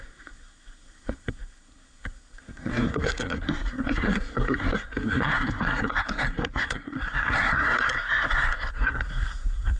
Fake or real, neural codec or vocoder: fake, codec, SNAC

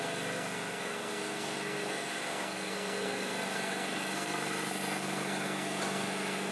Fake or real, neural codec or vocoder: fake, codec, SNAC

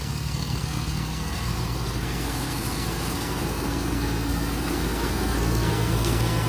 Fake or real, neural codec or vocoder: fake, codec, SNAC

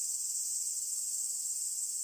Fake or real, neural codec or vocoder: real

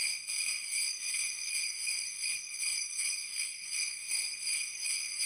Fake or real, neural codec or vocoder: fake, codec, SNAC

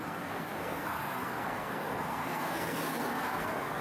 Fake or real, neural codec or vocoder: fake, codec, SNAC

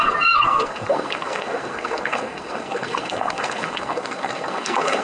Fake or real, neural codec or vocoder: fake, codec, SNAC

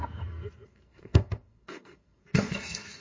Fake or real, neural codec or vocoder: fake, codec, SNAC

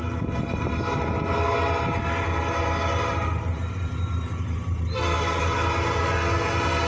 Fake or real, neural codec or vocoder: real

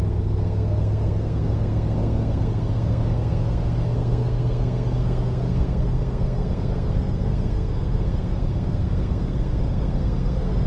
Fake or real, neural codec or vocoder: fake, codec, SNAC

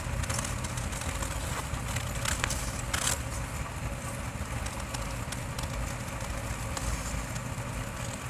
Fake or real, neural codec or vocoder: real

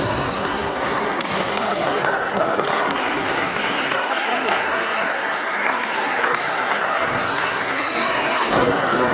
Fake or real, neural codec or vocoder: fake, codec, SNAC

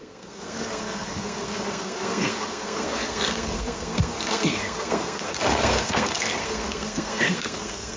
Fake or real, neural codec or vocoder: fake, codec, SNAC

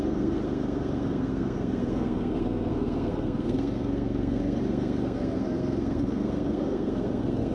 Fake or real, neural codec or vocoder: fake, codec, SNAC